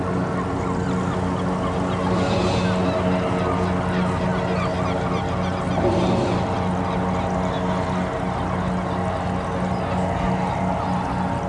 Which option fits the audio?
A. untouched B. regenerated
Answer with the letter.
A